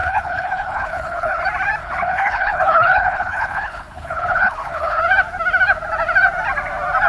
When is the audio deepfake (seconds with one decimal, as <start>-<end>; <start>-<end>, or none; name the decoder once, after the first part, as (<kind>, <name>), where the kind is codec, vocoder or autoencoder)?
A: 0.0-1.4 (codec, HILCodec); 1.8-5.0